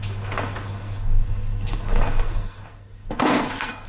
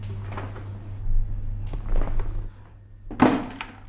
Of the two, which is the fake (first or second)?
first